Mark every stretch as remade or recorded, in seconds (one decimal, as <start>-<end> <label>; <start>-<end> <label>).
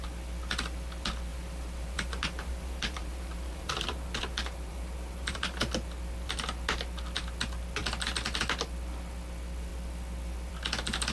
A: 0.0-1.3 recorded; 1.3-5.7 remade; 5.7-11.1 recorded